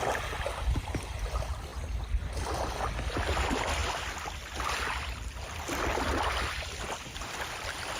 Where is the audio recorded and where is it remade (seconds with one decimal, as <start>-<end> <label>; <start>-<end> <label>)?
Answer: 0.0-8.0 recorded